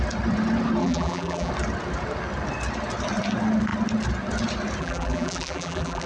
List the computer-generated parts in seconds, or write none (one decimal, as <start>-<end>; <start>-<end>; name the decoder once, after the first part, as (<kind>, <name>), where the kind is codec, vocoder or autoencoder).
0.8-1.5 (vocoder, BigVGAN v2); 4.8-6.1